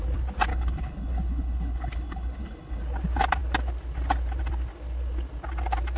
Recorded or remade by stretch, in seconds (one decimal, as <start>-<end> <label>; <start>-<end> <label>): 0.0-0.5 recorded; 0.5-2.8 remade; 2.8-6.0 recorded